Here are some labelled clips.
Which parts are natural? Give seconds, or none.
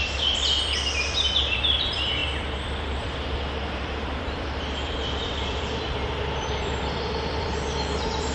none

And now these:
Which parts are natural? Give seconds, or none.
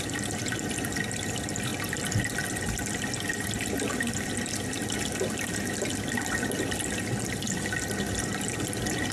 0.0-9.1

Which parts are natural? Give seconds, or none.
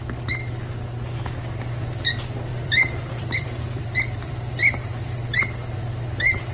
0.0-2.5; 5.4-6.5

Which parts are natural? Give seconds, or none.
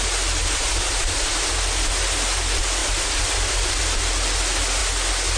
0.0-0.4; 1.5-2.8; 3.8-5.4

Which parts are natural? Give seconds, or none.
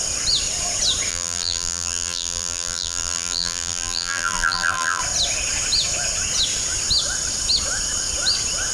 0.0-1.1; 5.0-8.7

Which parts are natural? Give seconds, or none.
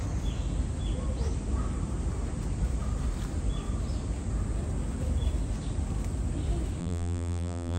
0.0-6.8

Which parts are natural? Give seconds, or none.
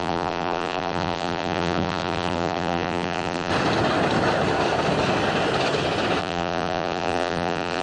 3.5-6.2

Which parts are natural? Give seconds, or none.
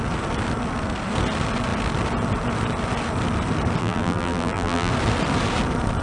0.0-3.8; 4.9-6.0